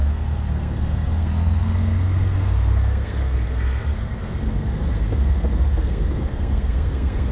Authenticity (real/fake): fake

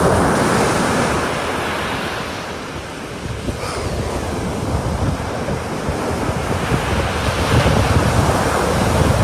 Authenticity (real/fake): real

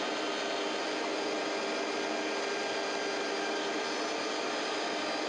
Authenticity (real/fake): real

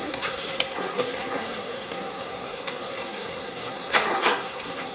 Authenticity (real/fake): fake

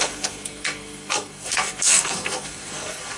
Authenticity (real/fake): fake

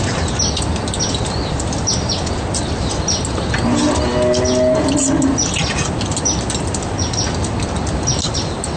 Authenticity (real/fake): real